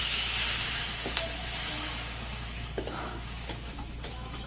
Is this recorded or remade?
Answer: remade